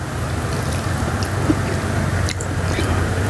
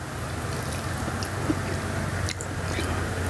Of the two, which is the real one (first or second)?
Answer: second